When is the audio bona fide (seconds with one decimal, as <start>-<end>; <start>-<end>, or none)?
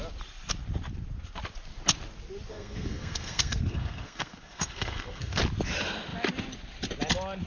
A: 0.0-2.5; 5.4-7.5